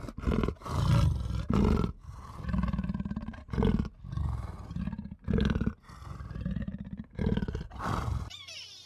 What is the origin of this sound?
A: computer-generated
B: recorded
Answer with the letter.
B